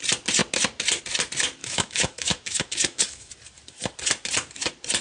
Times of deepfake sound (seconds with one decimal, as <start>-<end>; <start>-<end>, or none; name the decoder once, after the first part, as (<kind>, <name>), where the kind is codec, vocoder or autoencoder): 1.6-3.3 (autoencoder, DAC-VAE)